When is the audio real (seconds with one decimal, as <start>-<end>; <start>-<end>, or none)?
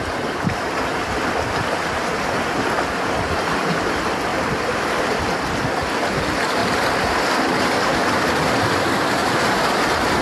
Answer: 0.0-9.2